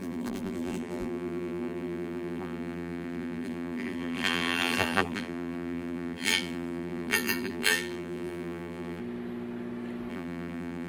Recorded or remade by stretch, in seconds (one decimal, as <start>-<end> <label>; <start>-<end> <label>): 0.0-9.0 remade; 9.0-10.1 recorded; 10.1-10.9 remade

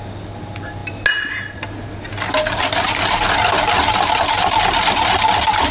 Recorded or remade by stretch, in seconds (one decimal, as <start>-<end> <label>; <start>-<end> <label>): 0.0-5.7 recorded